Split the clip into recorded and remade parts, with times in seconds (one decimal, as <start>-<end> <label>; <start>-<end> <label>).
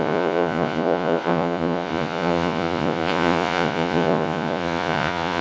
0.0-5.4 remade